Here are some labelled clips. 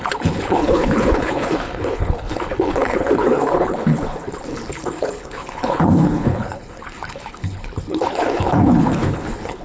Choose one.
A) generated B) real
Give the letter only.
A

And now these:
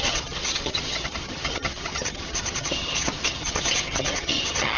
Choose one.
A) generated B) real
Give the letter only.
A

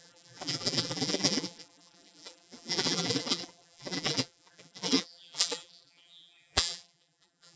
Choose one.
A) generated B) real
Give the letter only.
A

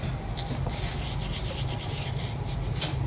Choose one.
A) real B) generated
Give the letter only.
A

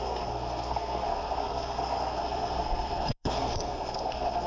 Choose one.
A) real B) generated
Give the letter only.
B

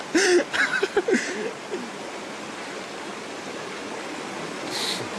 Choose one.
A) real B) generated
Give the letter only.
A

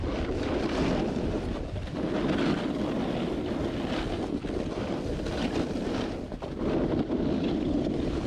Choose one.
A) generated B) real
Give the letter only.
B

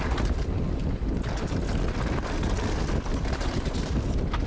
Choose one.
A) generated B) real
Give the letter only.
B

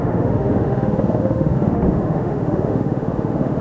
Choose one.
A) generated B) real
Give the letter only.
A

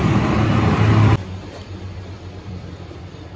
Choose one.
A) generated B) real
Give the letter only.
A